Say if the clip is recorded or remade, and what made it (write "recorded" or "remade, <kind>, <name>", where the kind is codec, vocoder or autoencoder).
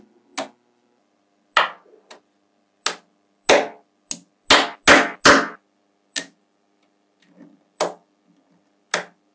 recorded